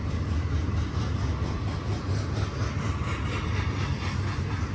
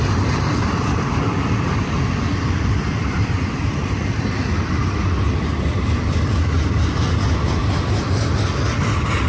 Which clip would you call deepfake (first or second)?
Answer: second